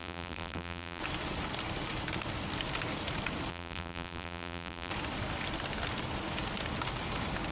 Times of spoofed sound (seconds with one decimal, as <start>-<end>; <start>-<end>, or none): 0.0-1.0; 3.5-4.9